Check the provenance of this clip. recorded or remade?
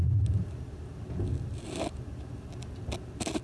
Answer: recorded